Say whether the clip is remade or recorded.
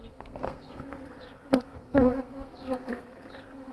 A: remade